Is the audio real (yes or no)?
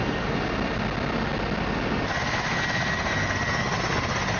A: yes